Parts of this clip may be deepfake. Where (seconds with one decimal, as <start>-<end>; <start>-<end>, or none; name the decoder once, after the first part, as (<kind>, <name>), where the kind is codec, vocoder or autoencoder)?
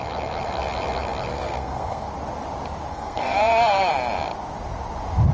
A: 1.3-2.1 (codec, SNAC); 2.9-3.9